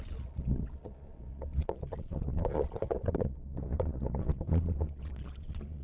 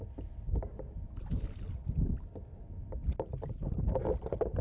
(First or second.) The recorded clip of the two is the second